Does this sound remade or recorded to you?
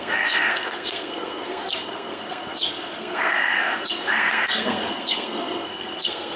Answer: remade